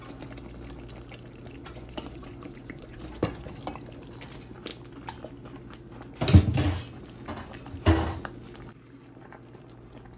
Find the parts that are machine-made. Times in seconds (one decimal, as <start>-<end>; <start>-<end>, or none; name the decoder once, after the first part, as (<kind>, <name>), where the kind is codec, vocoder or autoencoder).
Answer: 1.6-3.5 (vocoder, Vocos)